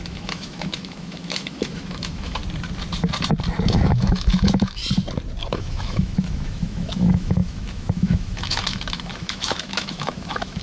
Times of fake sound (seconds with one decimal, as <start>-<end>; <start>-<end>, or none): 0.0-2.4; 3.7-4.8; 5.5-10.6